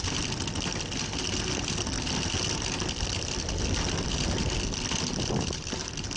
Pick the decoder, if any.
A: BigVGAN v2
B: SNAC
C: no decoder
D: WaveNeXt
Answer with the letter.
C